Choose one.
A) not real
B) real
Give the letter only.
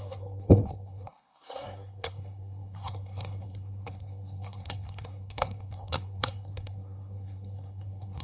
A